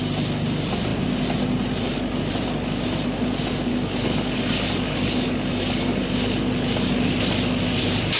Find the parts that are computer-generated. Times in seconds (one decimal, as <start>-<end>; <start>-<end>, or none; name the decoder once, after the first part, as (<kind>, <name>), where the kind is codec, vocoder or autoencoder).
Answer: 3.7-6.4 (codec, DAC)